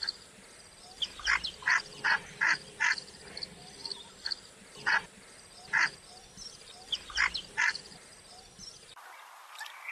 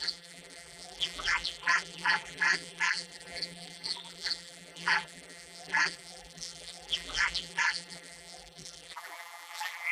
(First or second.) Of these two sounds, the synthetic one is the second